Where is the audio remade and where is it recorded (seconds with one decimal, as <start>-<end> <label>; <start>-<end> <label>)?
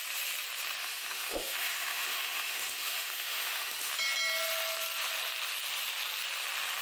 0.0-0.8 recorded; 0.8-3.9 remade; 3.9-6.8 recorded